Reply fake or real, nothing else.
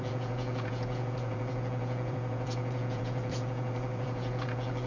fake